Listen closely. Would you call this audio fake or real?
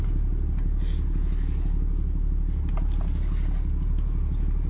real